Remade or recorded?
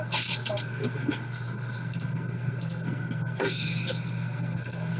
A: remade